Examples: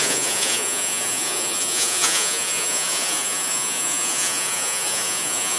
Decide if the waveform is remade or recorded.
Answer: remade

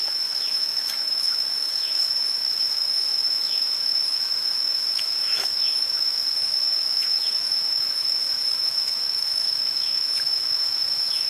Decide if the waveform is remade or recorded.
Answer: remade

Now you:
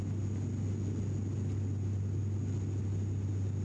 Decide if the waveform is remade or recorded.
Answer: recorded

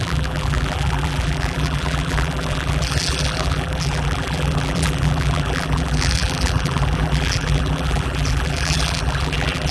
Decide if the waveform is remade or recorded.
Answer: remade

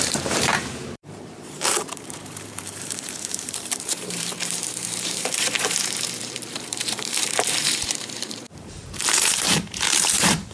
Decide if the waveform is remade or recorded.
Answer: remade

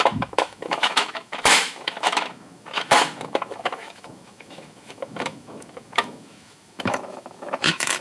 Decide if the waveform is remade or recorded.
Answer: remade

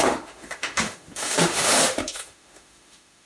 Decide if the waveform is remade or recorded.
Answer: remade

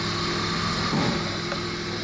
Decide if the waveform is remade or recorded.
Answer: recorded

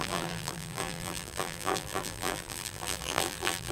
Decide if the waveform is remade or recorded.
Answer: remade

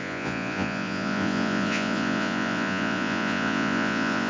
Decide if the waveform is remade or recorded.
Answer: remade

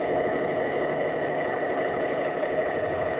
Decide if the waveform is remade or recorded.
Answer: remade